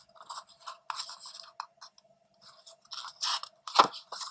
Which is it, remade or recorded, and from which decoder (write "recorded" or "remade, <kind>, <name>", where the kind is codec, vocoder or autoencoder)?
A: recorded